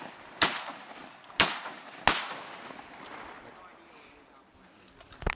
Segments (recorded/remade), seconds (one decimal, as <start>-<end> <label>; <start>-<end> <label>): 0.0-5.3 recorded